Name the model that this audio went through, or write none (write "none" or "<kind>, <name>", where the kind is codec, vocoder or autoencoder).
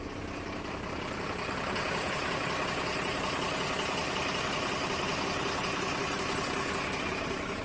none